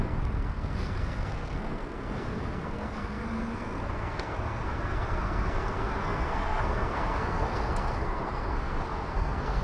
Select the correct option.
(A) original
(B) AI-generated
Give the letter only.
B